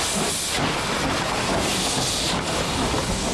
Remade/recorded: recorded